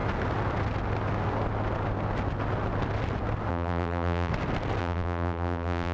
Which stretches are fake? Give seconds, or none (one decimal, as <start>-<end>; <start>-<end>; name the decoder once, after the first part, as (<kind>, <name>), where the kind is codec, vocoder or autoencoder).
3.5-4.3 (vocoder, BigVGAN v2); 4.8-5.9